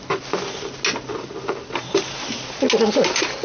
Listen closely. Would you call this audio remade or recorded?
recorded